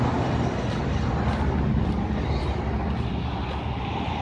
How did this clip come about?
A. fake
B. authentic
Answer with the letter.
B